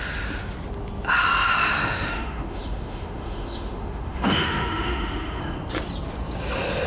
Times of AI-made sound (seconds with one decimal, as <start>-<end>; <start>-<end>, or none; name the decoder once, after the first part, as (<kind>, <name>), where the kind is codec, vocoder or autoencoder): 1.8-5.4 (autoencoder, DAC-VAE)